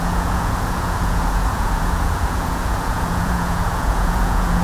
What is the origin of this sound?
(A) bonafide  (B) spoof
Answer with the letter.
B